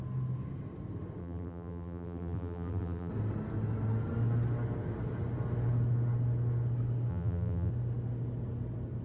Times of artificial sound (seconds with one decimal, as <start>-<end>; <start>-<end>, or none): 1.2-3.1; 7.1-7.7